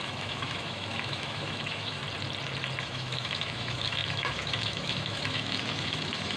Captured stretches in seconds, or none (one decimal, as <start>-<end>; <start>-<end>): 2.0-2.8